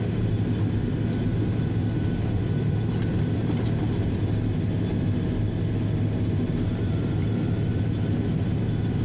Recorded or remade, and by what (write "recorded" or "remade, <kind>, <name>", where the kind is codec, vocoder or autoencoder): recorded